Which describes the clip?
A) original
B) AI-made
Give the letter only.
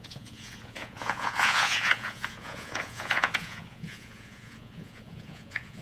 B